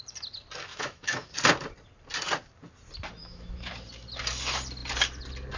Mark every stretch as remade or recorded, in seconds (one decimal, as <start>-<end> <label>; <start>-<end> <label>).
0.0-0.7 recorded; 0.7-1.3 remade; 1.3-3.2 recorded; 3.2-3.7 remade; 3.7-5.6 recorded